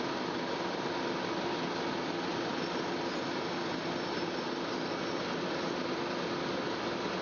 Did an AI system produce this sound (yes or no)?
no